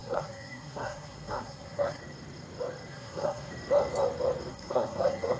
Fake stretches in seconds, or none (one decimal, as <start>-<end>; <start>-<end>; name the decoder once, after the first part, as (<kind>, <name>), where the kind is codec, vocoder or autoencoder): 0.0-2.0 (codec, SNAC); 2.9-3.5; 4.5-5.4